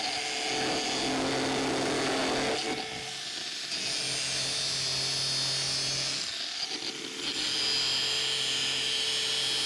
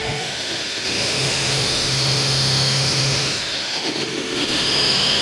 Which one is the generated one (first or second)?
second